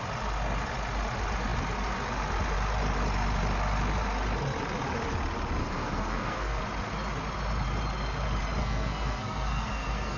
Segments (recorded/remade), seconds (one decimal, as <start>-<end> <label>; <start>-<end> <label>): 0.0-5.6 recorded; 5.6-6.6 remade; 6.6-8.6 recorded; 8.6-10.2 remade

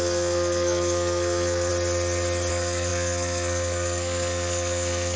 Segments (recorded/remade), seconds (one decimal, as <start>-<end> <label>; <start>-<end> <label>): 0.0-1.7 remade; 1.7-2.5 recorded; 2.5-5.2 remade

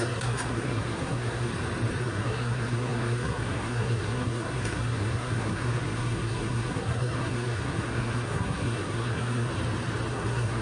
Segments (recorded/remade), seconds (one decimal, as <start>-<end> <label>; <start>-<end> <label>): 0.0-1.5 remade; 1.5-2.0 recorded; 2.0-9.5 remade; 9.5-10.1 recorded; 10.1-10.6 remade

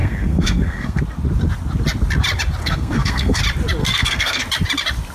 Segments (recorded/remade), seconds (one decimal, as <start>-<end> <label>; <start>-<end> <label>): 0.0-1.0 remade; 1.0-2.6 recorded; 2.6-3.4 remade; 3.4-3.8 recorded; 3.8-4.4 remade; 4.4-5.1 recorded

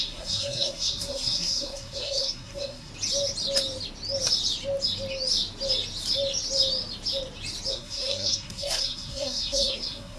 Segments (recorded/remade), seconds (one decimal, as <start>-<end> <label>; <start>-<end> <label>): 0.0-2.9 remade; 2.9-7.7 recorded; 7.7-10.2 remade

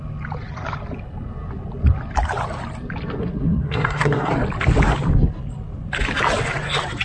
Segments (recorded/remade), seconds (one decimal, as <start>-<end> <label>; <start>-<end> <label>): 0.0-3.2 recorded; 3.2-4.3 remade; 4.3-7.0 recorded

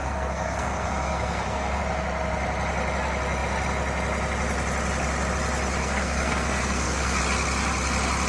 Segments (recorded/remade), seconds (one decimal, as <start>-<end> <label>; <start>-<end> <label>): 0.0-1.8 remade; 1.8-5.8 recorded; 5.8-7.2 remade; 7.2-8.3 recorded